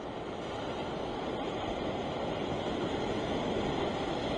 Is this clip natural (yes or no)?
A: yes